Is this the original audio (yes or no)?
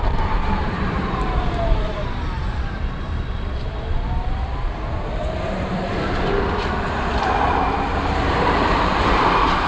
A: no